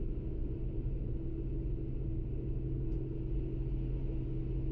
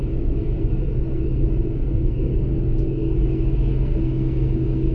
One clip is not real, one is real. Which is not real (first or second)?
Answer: second